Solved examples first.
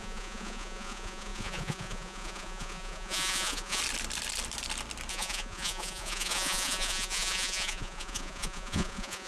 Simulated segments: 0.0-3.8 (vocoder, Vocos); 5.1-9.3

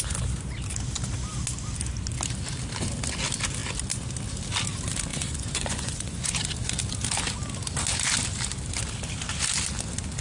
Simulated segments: 5.1-6.4 (vocoder, Vocos)

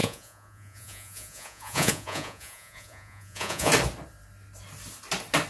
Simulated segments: 0.0-3.7 (vocoder, Vocos)